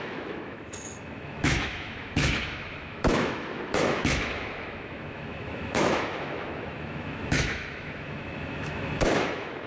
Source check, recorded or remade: remade